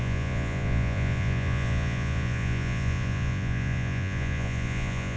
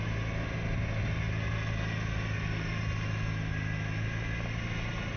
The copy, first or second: first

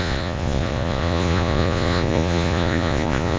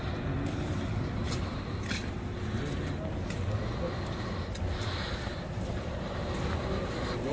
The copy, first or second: first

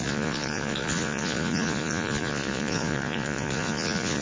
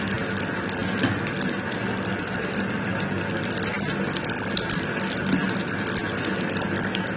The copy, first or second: first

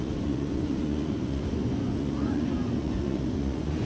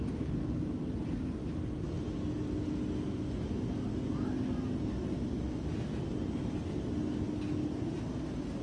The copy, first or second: first